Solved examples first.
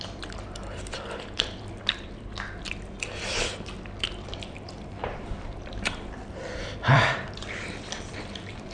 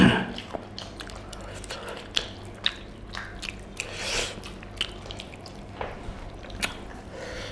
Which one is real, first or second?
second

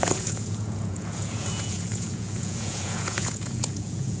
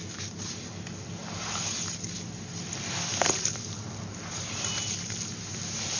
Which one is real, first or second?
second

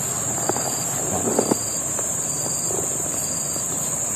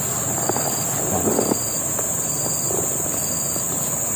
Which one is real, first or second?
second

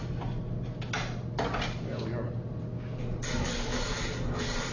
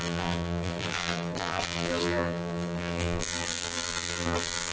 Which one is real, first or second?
first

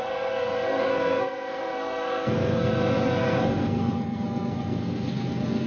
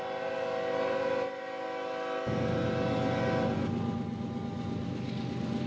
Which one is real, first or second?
second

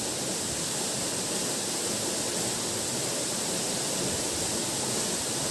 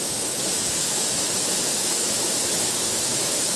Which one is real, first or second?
first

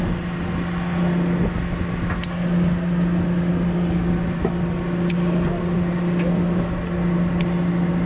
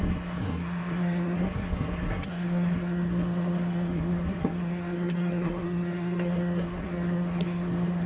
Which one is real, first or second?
first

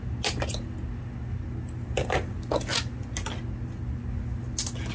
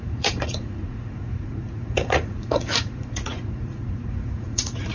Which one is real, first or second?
first